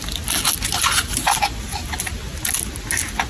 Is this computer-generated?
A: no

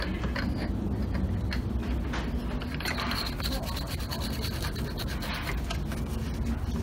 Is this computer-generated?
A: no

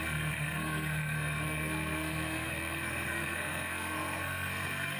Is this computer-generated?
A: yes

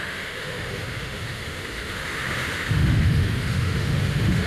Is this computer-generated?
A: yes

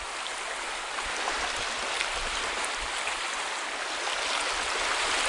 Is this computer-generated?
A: no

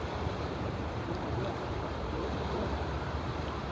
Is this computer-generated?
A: yes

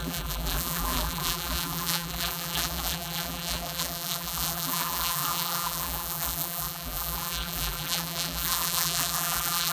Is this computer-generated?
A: yes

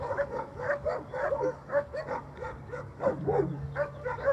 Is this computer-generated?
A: yes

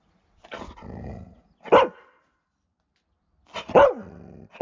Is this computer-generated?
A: no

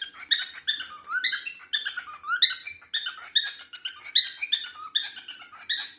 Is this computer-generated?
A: no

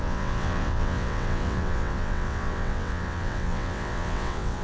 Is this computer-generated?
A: yes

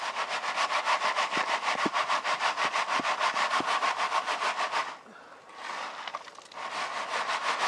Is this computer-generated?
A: no